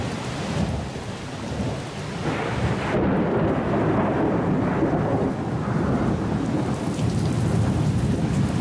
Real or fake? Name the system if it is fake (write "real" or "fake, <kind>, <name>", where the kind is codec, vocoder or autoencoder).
real